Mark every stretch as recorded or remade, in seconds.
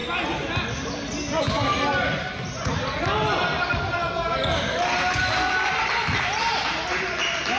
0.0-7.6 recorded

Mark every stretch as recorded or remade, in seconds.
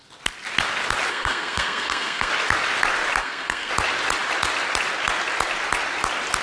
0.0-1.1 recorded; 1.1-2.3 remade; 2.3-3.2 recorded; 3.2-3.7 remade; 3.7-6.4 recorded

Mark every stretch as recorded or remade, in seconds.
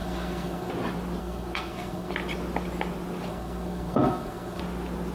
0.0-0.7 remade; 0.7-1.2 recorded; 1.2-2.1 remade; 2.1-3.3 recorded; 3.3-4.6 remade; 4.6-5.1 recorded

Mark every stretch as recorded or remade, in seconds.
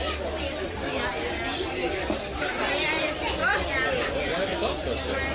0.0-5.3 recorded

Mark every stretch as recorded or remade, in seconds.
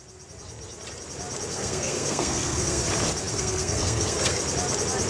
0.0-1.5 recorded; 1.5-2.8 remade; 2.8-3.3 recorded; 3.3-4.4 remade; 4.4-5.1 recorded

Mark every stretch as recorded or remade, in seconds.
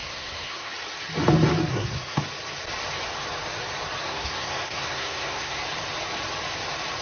0.0-0.7 remade; 0.7-1.7 recorded; 1.7-2.2 remade; 2.2-4.0 recorded; 4.0-5.6 remade; 5.6-7.0 recorded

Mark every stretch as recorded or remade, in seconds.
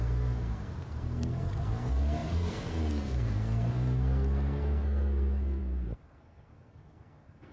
0.0-7.5 remade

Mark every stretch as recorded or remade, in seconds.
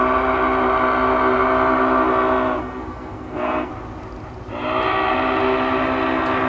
0.0-2.6 recorded; 2.6-3.7 remade; 3.7-6.5 recorded